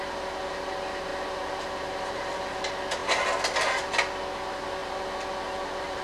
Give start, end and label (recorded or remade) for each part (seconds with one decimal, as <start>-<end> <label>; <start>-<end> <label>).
0.0-6.0 recorded